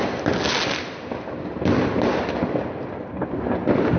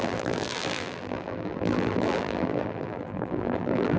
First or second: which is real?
first